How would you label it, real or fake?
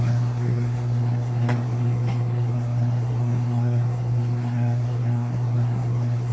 fake